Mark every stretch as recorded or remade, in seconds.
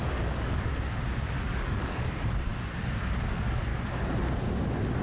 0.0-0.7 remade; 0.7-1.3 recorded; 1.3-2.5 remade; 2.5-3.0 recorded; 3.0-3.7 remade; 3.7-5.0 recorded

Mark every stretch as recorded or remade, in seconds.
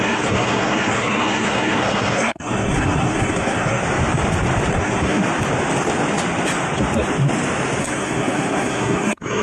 0.0-3.8 remade; 3.8-4.7 recorded; 4.7-5.2 remade; 5.2-7.8 recorded; 7.8-9.4 remade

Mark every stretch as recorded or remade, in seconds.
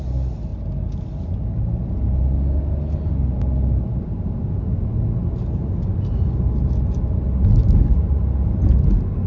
0.0-9.3 recorded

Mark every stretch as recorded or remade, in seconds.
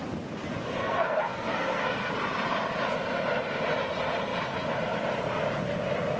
0.0-0.8 recorded; 0.8-2.1 remade; 2.1-6.2 recorded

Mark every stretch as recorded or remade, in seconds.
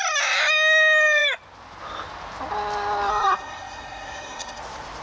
0.0-3.1 recorded; 3.1-4.6 remade; 4.6-5.0 recorded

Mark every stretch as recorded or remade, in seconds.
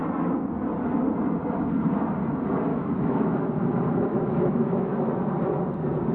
0.0-2.7 recorded; 2.7-3.5 remade; 3.5-4.1 recorded; 4.1-5.1 remade; 5.1-6.1 recorded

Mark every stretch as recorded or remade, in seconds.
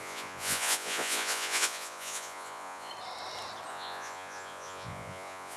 0.0-2.9 remade; 2.9-3.7 recorded; 3.7-5.6 remade